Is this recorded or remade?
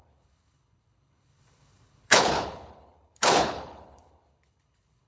remade